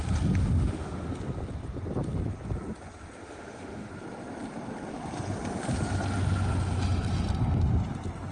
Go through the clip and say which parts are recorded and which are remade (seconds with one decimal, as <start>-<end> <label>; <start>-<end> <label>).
0.0-0.4 recorded; 0.4-1.1 remade; 1.1-3.2 recorded; 3.2-3.9 remade; 3.9-8.3 recorded